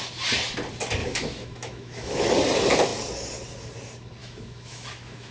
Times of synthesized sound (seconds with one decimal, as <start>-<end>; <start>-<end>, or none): 1.0-2.3; 4.2-5.3

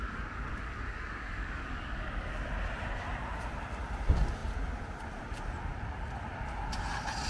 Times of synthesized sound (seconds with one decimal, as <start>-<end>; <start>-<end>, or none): 0.0-2.1

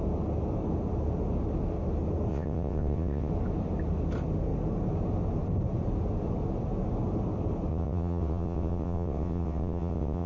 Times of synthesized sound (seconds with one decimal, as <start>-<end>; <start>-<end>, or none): 2.3-3.3; 7.7-10.3

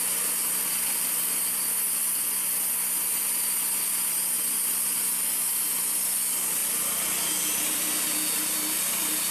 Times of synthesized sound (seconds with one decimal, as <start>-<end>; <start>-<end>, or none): none

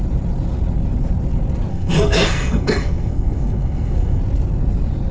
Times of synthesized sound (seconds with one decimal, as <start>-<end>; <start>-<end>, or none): 1.7-4.2